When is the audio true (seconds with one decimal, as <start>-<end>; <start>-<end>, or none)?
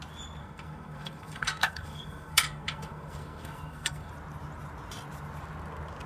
0.0-0.4; 4.1-6.1